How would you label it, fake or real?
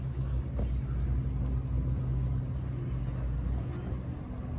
real